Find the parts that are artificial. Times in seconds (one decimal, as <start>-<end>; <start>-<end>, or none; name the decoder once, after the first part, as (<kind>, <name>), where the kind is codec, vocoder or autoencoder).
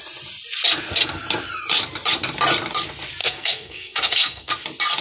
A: 3.2-4.5 (codec, SNAC)